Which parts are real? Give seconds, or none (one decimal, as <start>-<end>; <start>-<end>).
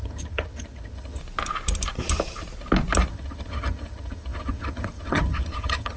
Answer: 1.2-3.1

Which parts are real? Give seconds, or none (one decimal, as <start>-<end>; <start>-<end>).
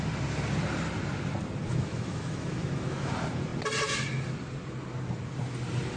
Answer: 0.0-1.7; 3.1-6.0